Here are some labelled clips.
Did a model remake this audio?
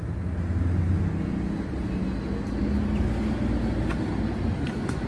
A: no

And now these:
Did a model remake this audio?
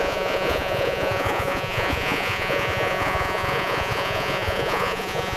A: yes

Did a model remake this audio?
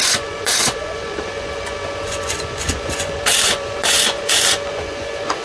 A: yes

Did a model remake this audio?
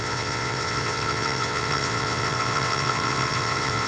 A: yes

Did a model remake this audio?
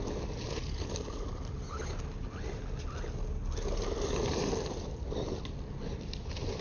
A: no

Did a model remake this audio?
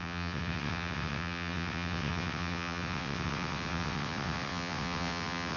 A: yes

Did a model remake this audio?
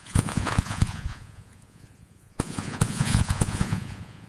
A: yes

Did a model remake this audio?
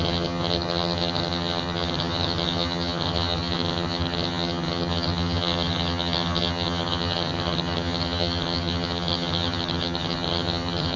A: yes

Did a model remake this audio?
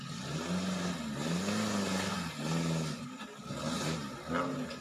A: no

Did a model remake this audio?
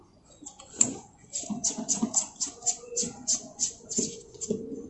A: yes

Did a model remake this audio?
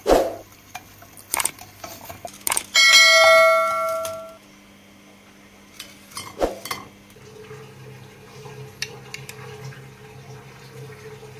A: no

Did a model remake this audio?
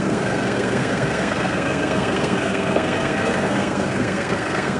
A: yes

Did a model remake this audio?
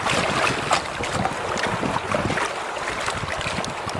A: no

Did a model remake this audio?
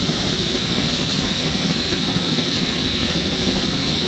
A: yes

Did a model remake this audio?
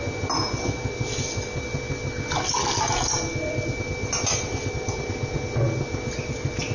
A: no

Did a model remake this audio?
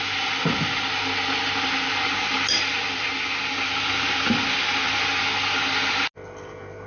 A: no